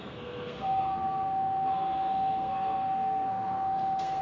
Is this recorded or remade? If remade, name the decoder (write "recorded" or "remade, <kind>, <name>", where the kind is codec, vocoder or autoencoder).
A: remade, codec, SNAC